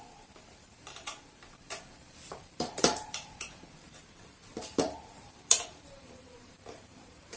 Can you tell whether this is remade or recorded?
remade